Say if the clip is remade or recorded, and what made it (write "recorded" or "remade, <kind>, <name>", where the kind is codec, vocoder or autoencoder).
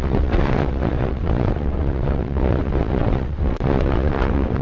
remade, vocoder, WaveNeXt